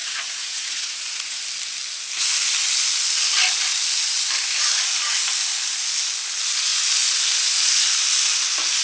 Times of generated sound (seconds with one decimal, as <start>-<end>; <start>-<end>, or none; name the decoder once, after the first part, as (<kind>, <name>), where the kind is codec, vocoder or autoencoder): 0.0-1.4 (vocoder, Vocos)